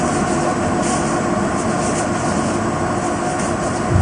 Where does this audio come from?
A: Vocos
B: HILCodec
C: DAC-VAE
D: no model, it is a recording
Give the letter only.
D